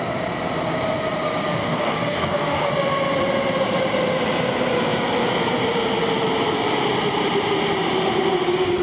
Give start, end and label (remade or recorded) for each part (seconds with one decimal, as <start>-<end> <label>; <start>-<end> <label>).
0.0-1.6 recorded; 1.6-2.7 remade; 2.7-8.8 recorded